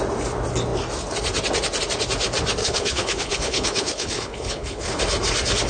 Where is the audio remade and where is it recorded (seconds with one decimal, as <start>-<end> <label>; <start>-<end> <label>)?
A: 0.0-2.6 recorded; 2.6-5.0 remade; 5.0-5.7 recorded

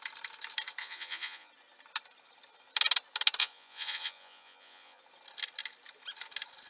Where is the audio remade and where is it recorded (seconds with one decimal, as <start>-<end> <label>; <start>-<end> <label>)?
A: 0.0-0.8 recorded; 0.8-1.5 remade; 1.5-3.4 recorded; 3.4-5.0 remade; 5.0-6.7 recorded